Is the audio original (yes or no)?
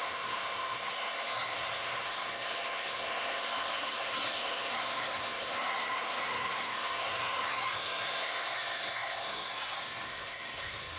no